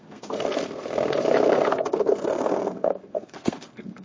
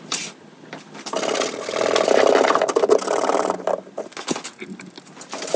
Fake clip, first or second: first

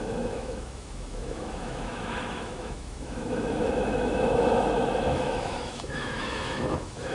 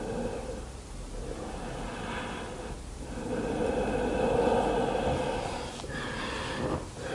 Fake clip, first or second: first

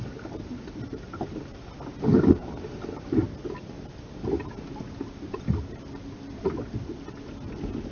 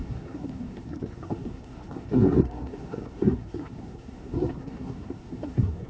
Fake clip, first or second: second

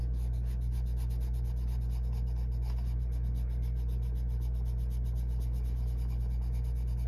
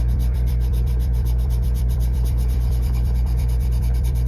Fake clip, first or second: second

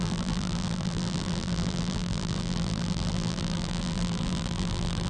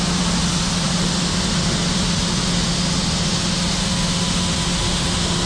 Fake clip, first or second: first